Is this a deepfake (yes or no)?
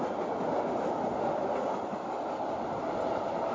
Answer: no